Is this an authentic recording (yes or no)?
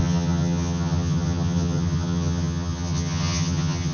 no